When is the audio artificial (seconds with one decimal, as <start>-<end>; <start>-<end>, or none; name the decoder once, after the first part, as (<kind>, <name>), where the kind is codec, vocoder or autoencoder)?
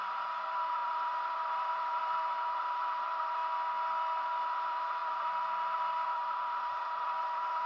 0.0-3.4 (vocoder, BigVGAN v2); 4.4-7.7